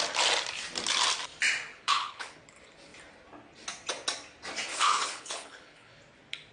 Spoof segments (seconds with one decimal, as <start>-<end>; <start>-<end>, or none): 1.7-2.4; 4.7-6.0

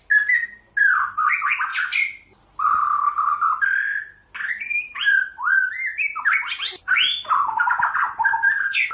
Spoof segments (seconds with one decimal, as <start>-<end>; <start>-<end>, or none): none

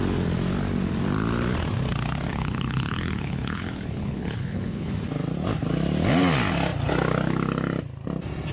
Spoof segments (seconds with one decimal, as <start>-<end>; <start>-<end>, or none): 2.3-4.9